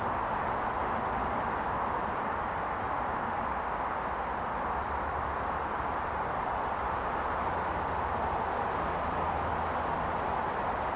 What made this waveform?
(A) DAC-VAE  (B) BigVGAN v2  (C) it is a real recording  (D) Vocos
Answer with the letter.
C